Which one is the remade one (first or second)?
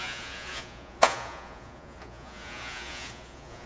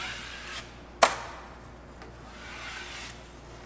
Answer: first